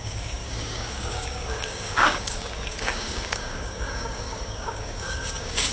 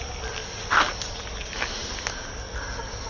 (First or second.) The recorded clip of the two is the second